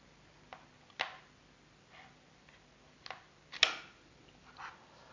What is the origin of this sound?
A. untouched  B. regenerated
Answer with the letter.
A